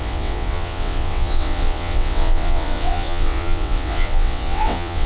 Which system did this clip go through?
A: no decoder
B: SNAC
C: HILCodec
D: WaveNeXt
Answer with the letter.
D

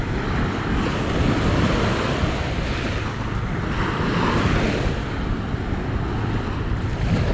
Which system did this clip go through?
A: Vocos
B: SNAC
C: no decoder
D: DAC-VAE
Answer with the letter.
C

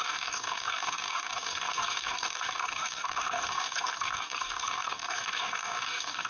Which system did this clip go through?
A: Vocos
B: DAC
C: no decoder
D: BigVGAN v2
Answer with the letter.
B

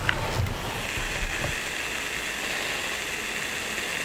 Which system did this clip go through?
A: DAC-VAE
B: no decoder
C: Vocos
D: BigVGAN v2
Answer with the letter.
B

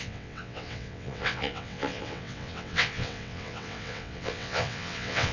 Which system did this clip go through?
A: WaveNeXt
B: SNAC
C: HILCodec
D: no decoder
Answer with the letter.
A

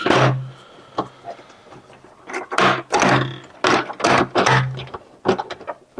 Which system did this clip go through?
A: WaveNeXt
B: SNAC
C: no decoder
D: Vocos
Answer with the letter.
C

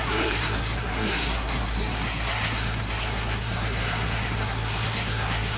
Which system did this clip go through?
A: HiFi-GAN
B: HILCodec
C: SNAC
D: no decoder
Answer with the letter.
C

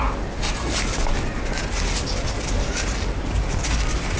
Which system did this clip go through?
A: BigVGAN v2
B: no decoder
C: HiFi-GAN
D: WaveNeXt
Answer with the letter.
B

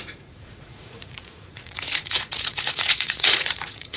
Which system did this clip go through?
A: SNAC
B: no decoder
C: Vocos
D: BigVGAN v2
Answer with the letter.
C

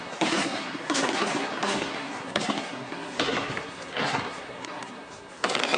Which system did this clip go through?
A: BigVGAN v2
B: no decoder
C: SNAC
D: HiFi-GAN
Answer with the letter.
C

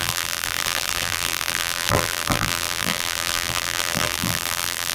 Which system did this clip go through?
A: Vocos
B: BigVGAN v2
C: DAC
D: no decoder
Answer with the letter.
B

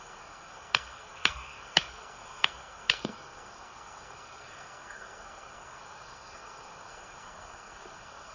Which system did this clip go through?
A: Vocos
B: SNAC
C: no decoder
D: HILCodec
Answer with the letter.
B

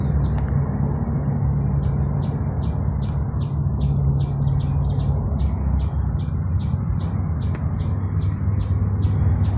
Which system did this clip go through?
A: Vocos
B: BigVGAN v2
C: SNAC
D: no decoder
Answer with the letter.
D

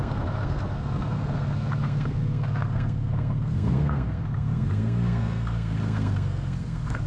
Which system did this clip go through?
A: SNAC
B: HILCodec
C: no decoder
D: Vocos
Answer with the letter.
A